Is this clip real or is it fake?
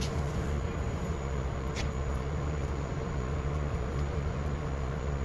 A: fake